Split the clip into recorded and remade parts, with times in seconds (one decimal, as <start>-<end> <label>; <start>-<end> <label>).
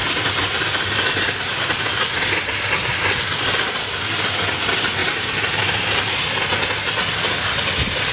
0.0-0.6 remade; 0.6-5.0 recorded; 5.0-6.2 remade; 6.2-8.1 recorded